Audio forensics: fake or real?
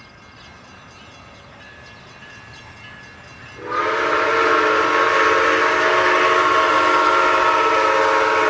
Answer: real